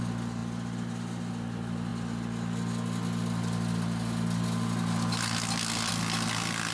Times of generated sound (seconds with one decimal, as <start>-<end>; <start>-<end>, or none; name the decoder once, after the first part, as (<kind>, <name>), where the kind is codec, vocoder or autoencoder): none